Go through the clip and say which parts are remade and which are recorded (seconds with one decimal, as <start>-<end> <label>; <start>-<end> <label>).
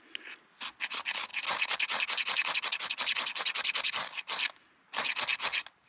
0.0-5.9 recorded